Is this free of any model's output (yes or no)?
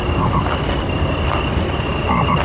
no